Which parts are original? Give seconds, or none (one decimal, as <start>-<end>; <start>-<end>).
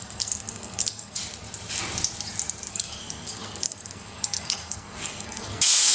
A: 1.2-2.7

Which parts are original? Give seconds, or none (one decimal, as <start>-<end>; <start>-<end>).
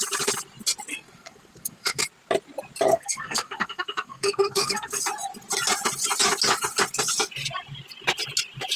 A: 0.0-0.9; 2.0-2.9; 5.0-8.8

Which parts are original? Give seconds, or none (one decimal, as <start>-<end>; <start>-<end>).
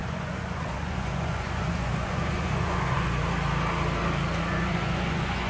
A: 3.2-4.5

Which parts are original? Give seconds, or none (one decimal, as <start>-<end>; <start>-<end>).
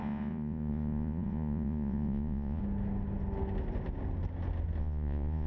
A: 2.6-4.8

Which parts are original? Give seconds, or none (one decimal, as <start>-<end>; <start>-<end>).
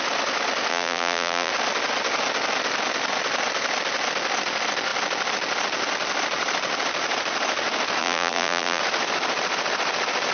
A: 0.0-0.7; 1.5-8.0; 8.8-10.3